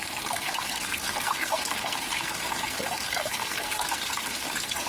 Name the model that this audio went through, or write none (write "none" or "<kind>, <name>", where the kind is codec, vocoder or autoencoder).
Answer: codec, SNAC